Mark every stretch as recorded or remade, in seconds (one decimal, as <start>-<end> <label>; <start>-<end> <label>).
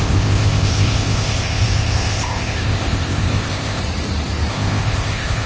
0.0-3.8 remade; 3.8-4.5 recorded; 4.5-5.5 remade